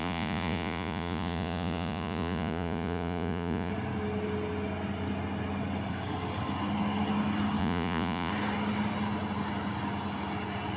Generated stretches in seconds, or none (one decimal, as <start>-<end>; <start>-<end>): 0.0-3.7; 7.6-8.3